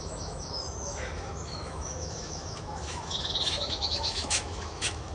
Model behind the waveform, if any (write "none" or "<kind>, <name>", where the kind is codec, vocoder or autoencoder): autoencoder, DAC-VAE